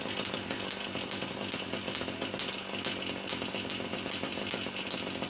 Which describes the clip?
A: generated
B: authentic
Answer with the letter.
B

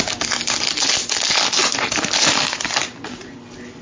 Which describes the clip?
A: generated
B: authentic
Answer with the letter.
B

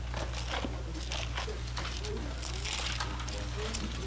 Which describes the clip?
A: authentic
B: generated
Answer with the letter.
A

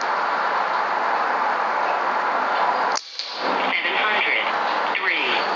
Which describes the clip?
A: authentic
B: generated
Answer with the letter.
A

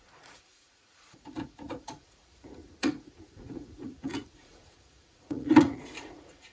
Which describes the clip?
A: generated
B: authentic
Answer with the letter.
A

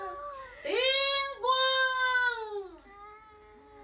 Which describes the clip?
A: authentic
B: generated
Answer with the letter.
A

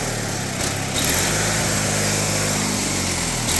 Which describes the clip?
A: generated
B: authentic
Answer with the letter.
B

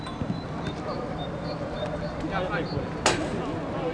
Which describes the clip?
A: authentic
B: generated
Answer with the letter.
A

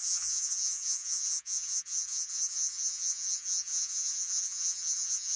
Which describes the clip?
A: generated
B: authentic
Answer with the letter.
A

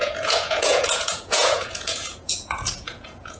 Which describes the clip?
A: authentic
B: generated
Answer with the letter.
B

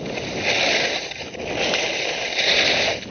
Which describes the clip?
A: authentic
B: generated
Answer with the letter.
A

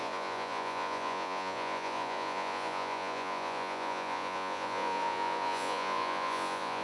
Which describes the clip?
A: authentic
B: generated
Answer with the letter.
B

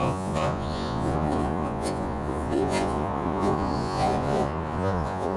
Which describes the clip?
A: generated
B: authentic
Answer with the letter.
A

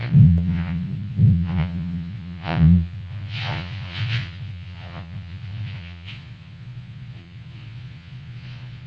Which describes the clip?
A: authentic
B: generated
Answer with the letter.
B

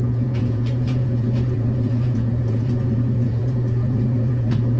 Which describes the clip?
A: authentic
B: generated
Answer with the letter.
B